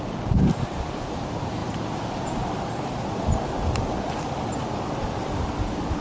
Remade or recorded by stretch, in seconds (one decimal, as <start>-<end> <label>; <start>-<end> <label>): 0.0-6.0 recorded